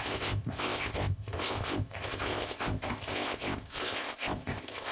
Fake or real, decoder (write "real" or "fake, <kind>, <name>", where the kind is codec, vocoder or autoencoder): fake, codec, ZipCodec